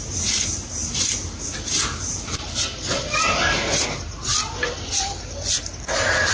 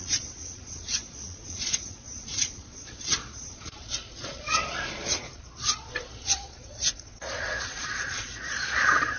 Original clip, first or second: first